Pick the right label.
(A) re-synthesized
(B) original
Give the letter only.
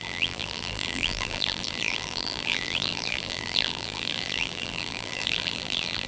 A